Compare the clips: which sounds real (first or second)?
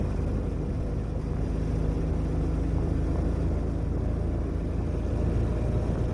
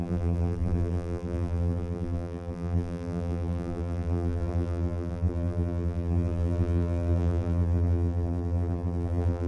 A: first